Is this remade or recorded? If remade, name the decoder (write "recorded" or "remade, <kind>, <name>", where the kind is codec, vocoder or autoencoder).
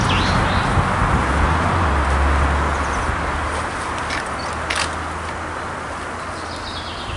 recorded